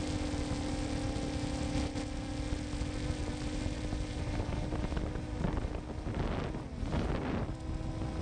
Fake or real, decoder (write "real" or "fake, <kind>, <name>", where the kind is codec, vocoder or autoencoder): real